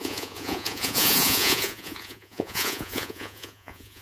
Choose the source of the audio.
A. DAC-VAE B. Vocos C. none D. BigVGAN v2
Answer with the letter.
B